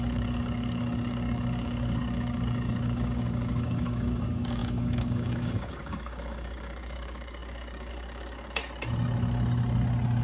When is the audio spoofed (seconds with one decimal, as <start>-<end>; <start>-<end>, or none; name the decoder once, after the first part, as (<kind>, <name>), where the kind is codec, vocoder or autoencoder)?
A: 0.0-8.6 (codec, DAC)